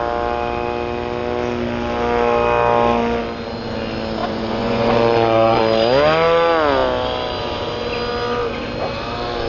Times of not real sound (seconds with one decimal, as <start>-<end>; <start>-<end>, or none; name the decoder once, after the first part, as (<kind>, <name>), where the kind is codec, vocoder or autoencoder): 4.2-5.6 (vocoder, Vocos)